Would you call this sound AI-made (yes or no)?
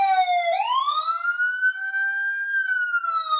no